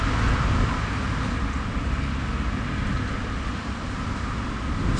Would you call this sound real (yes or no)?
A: yes